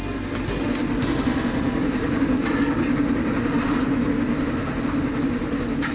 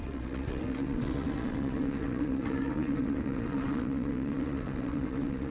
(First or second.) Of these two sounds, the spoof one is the second